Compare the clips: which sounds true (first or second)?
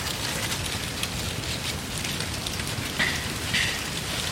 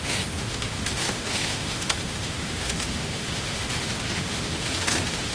first